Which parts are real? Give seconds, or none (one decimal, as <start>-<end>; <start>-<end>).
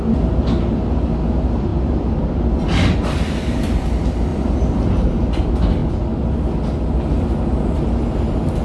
0.0-1.7; 3.3-4.3; 4.9-8.6